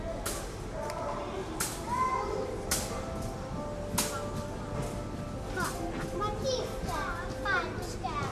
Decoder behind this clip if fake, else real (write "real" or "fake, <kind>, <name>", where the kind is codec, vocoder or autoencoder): real